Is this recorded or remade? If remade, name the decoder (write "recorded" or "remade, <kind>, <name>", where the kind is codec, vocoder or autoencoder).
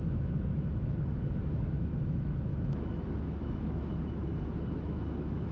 remade, autoencoder, DAC-VAE